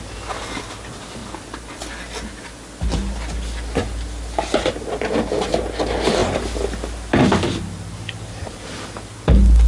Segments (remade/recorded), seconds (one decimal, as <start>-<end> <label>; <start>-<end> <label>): 0.0-9.7 recorded